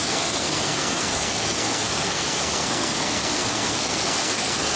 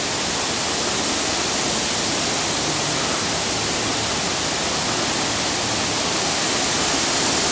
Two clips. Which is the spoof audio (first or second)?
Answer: first